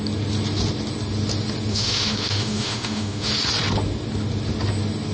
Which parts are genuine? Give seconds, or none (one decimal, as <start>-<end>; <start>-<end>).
0.0-1.7; 3.3-5.1